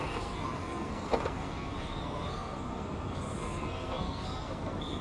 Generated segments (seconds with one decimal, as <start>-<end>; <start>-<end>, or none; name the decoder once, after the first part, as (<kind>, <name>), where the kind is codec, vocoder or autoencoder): 0.0-5.0 (codec, SNAC)